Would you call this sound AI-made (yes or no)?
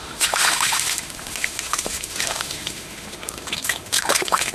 yes